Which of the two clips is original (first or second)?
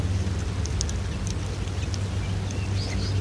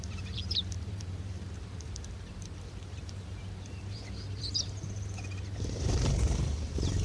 first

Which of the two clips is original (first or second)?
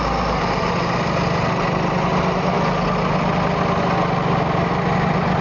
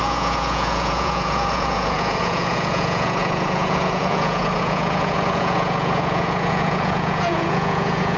first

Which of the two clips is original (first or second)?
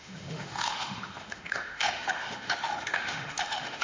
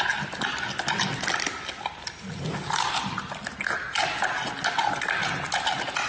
second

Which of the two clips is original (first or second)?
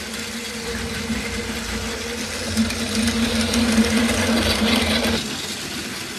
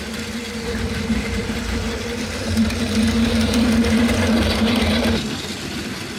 first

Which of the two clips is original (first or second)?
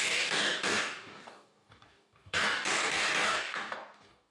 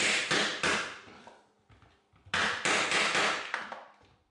second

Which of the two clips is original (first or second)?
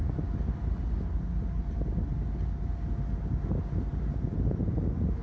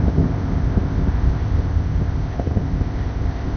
first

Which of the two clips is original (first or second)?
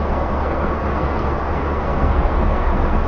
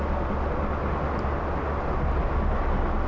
second